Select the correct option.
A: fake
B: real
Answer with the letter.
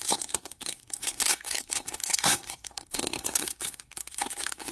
A